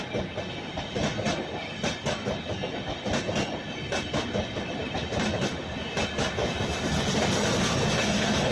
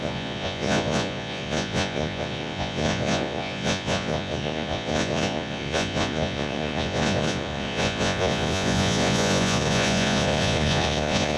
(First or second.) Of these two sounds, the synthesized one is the second